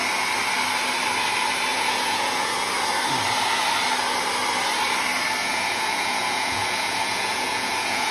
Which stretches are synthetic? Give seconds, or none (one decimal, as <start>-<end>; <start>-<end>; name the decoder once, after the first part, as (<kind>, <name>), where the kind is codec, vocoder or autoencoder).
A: 1.7-2.7 (vocoder, Vocos); 5.4-8.1